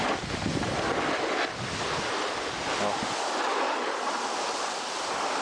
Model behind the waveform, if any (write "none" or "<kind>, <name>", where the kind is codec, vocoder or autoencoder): none